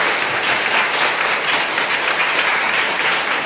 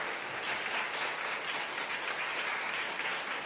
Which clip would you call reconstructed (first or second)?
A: first